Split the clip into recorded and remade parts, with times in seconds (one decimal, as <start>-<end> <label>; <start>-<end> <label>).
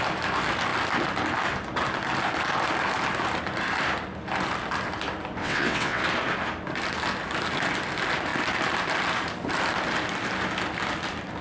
0.0-5.4 recorded; 5.4-6.0 remade; 6.0-11.4 recorded